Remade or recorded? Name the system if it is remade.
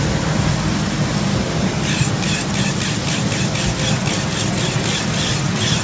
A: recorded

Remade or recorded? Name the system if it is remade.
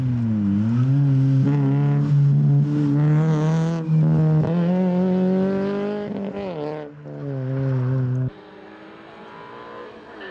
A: recorded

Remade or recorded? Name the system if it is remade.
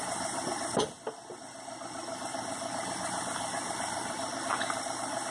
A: recorded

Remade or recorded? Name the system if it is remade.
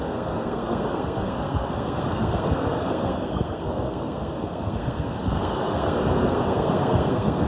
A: remade, codec, SNAC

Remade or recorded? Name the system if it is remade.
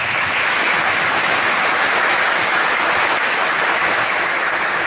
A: remade, autoencoder, DAC-VAE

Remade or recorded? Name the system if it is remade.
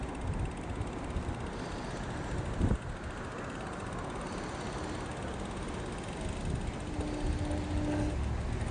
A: recorded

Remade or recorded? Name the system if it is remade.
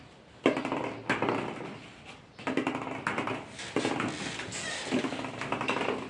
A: recorded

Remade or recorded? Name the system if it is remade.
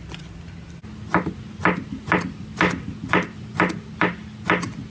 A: recorded